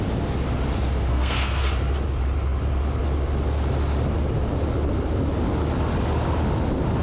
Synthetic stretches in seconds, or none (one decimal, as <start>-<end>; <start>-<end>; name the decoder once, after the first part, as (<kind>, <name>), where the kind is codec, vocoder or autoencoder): 1.1-1.7 (codec, SNAC)